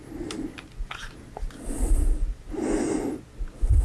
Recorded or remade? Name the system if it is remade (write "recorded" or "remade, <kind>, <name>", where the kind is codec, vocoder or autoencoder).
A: recorded